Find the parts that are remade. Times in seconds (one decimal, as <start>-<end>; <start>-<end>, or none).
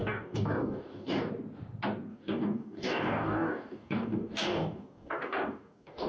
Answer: 0.0-1.3; 2.1-6.1